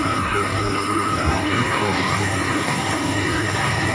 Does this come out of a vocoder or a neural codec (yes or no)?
yes